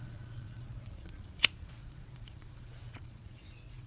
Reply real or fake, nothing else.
fake